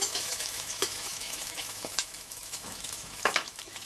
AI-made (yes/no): yes